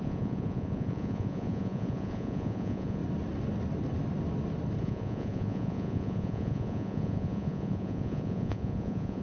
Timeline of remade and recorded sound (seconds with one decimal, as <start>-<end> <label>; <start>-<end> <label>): 0.0-3.0 remade; 3.0-4.8 recorded; 4.8-9.2 remade